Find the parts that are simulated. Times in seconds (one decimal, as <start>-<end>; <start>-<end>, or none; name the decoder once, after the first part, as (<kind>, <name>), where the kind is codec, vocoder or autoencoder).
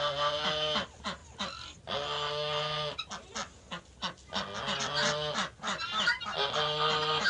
none